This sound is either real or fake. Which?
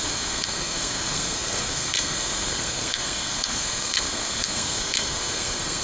fake